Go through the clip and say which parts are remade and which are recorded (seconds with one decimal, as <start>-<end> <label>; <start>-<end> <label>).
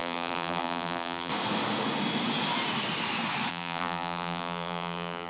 0.0-1.3 remade; 1.3-3.5 recorded; 3.5-5.3 remade